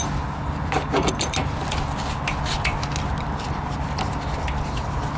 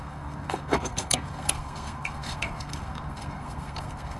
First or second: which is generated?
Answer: second